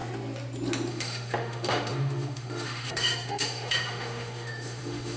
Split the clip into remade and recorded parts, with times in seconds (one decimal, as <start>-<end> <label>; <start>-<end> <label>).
0.0-0.9 recorded; 0.9-5.2 remade